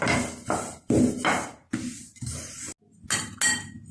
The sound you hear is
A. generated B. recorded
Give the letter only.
B